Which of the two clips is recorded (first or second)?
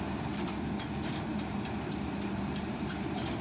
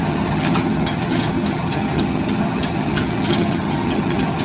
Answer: first